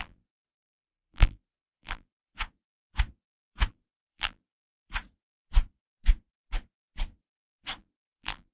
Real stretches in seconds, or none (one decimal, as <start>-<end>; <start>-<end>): 2.3-3.7; 4.6-7.8